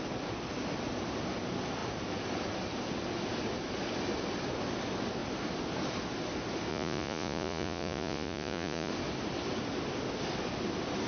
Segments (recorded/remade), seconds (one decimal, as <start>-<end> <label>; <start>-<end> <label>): 0.0-6.7 recorded; 6.7-8.9 remade; 8.9-11.1 recorded